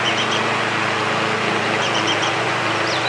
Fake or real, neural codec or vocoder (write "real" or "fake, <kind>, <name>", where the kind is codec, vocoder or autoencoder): fake, vocoder, Vocos